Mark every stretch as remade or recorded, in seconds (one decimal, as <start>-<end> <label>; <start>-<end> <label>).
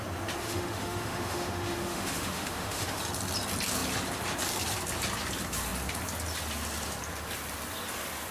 0.0-0.4 recorded; 0.4-3.0 remade; 3.0-8.3 recorded